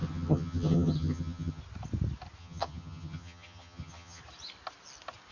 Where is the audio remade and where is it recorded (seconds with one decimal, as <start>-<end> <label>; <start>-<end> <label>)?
0.0-1.6 remade; 1.6-2.4 recorded; 2.4-4.2 remade; 4.2-5.3 recorded